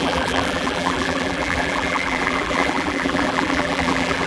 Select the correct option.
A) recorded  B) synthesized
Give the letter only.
B